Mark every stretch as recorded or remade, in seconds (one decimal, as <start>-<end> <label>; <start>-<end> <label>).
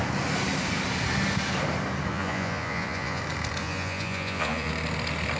0.0-2.1 recorded; 2.1-3.2 remade; 3.2-3.6 recorded; 3.6-4.7 remade; 4.7-5.4 recorded